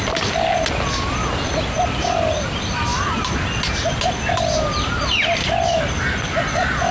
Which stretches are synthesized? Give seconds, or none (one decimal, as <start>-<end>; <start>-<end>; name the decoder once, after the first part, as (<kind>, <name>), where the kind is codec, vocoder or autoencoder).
none